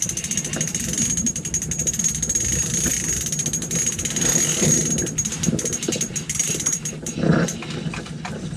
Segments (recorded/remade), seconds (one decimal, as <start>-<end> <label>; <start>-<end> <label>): 0.0-8.6 recorded